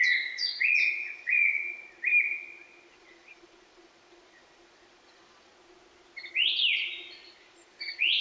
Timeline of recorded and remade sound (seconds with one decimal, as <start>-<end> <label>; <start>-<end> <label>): 0.0-1.6 remade; 1.6-2.9 recorded; 2.9-5.5 remade; 5.5-7.4 recorded; 7.4-8.2 remade

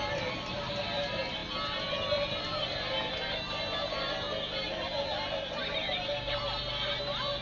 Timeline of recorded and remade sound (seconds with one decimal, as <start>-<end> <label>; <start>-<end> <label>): 0.0-7.4 recorded

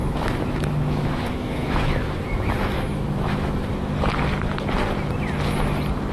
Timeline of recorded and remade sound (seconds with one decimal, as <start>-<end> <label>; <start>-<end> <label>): 0.0-3.7 remade; 3.7-6.1 recorded

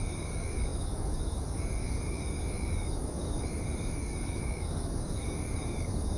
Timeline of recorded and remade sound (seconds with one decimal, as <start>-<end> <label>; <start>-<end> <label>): 0.0-6.2 remade

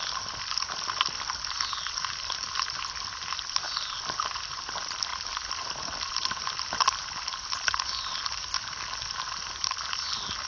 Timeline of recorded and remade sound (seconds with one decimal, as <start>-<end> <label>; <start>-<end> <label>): 0.0-10.5 recorded

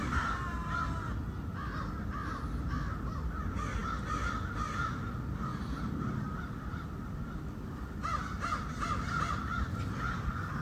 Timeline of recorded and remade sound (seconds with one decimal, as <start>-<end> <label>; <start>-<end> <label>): 0.0-10.6 recorded

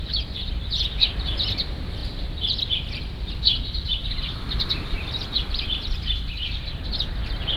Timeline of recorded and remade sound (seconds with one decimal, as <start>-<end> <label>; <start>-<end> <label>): 0.0-7.6 remade

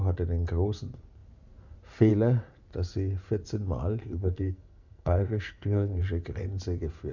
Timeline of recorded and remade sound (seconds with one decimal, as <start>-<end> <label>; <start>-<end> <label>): 0.0-4.0 recorded; 4.0-6.0 remade; 6.0-7.1 recorded